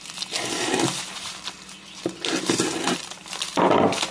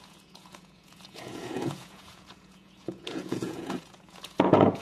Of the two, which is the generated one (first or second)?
second